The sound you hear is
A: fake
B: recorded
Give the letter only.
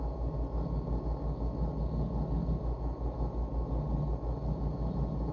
B